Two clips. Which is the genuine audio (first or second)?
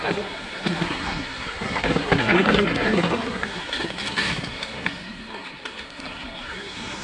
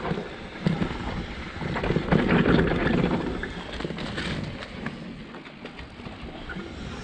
second